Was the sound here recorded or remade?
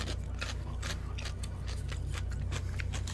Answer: recorded